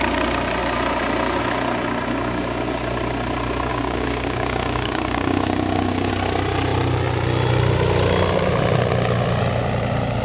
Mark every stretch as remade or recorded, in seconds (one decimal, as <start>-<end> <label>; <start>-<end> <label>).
0.0-3.7 recorded; 3.7-6.1 remade; 6.1-10.2 recorded